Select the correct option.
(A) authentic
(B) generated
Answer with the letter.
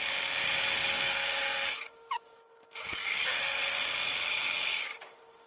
B